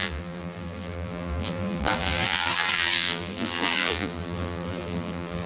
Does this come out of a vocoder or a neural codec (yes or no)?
yes